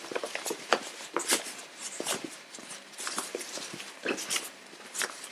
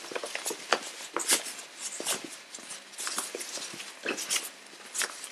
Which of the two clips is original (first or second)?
second